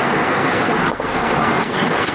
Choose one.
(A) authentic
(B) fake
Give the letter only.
B